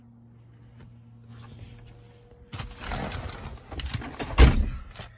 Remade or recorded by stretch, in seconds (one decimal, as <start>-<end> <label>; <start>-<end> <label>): 0.0-5.2 recorded